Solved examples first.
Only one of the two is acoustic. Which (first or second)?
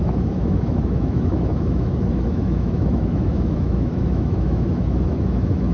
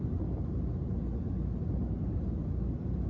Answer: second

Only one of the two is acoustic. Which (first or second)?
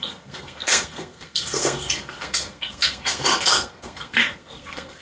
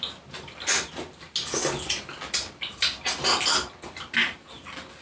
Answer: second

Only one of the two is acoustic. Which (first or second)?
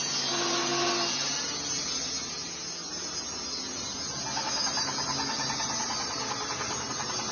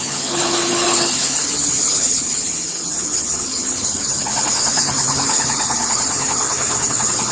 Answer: first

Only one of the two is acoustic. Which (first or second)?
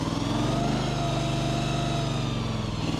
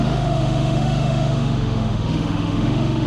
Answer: first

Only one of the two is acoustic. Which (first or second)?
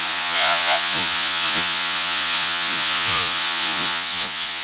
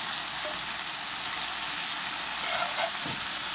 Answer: second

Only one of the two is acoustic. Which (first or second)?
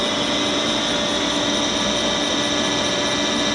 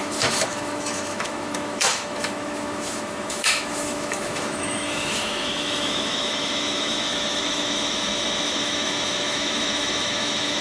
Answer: first